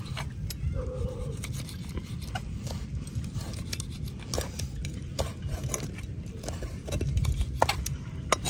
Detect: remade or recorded recorded